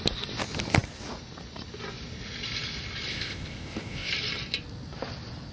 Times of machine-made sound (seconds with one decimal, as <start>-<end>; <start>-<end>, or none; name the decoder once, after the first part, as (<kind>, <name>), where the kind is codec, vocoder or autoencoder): 3.1-4.1 (codec, ZipCodec)